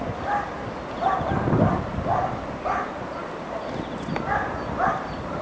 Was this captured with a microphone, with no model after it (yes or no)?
yes